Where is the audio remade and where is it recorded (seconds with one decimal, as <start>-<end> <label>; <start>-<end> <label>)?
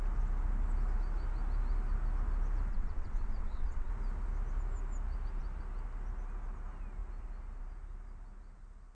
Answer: 0.0-2.7 recorded; 2.7-3.9 remade; 3.9-8.9 recorded